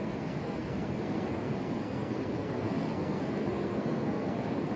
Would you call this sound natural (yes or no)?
no